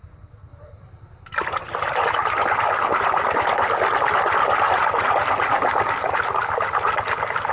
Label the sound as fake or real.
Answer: real